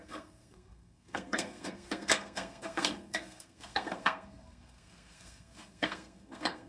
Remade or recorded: remade